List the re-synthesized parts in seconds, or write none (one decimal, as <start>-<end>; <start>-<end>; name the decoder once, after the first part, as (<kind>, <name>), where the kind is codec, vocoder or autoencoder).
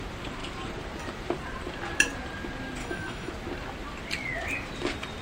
2.8-3.3 (autoencoder, DAC-VAE)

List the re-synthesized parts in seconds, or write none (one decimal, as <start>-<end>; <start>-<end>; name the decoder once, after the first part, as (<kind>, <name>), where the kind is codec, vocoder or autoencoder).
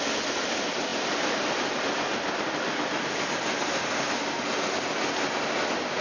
none